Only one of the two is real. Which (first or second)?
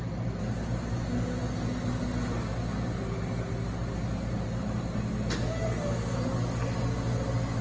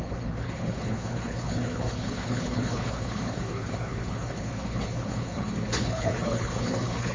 first